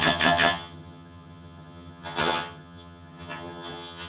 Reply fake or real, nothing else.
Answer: fake